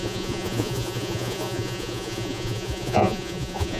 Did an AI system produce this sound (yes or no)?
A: yes